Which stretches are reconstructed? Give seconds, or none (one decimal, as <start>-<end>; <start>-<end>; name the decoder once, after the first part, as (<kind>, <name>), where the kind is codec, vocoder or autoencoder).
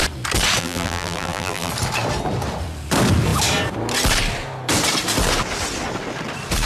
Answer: 0.6-1.7 (vocoder, BigVGAN v2)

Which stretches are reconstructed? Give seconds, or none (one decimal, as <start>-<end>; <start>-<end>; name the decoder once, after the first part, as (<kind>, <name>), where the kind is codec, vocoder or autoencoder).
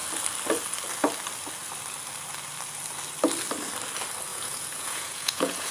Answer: 4.3-5.7 (vocoder, Vocos)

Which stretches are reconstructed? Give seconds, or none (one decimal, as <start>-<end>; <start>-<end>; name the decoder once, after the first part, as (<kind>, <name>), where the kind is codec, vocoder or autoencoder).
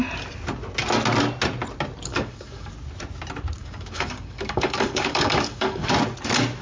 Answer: 2.1-2.7 (codec, DAC); 3.6-5.9